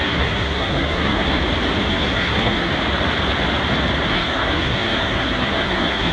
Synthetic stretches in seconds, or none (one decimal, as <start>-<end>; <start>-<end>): 0.0-1.4; 1.9-2.7; 4.1-6.1